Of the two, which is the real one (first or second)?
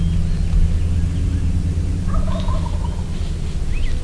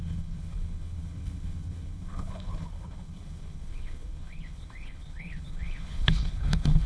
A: first